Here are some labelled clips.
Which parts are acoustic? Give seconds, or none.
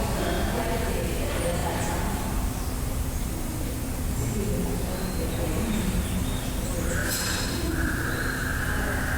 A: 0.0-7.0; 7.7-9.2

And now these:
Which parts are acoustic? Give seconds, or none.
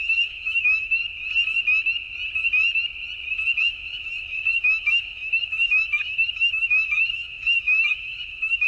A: 1.0-3.6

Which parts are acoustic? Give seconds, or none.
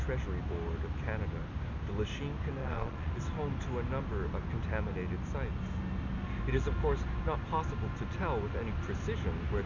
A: 0.0-2.6; 3.1-9.7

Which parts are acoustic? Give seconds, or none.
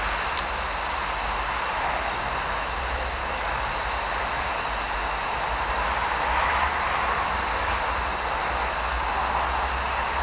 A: 0.0-3.2; 3.7-10.2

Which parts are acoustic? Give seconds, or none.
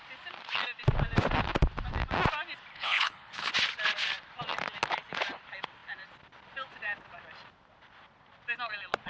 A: 0.0-2.7; 3.5-9.1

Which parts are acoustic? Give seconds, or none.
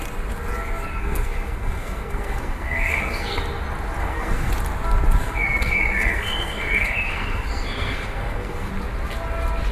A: 0.0-0.9; 3.4-4.0; 4.5-5.2; 8.7-9.7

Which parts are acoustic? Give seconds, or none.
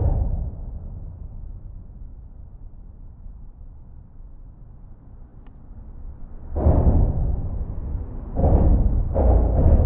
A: 4.8-5.3; 6.2-8.4; 9.0-9.9